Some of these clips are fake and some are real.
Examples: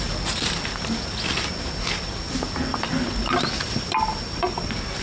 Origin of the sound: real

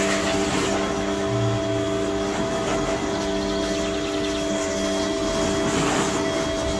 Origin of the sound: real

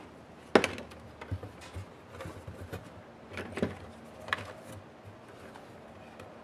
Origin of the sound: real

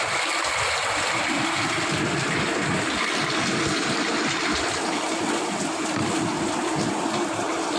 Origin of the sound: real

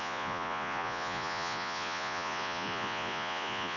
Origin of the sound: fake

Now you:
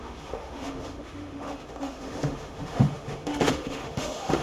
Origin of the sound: fake